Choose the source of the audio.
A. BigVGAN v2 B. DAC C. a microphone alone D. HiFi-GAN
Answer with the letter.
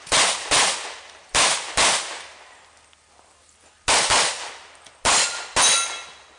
C